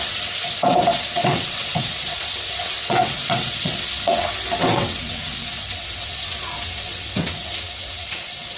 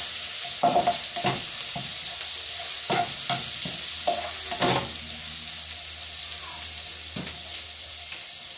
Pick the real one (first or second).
second